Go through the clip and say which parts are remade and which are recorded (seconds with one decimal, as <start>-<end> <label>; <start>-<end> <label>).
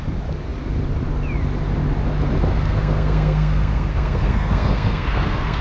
0.0-2.5 recorded; 2.5-5.6 remade